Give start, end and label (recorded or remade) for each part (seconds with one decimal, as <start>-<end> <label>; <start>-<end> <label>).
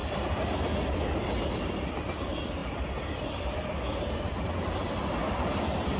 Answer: 0.0-6.0 remade